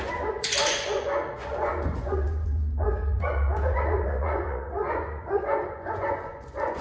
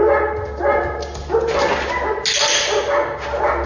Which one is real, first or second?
second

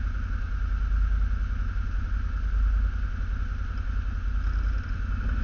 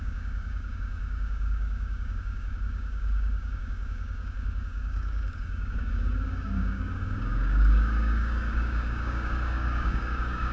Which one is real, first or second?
first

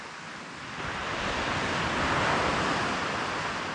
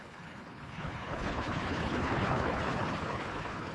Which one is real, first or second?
first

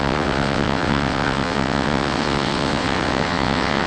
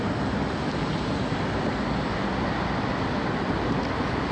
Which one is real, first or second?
second